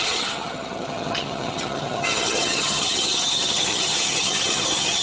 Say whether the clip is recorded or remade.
remade